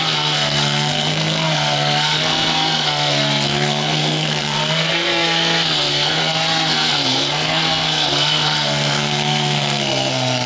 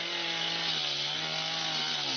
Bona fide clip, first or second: second